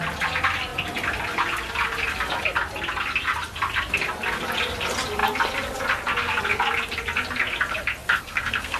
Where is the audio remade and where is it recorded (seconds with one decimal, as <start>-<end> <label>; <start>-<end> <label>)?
0.0-8.0 recorded; 8.0-8.8 remade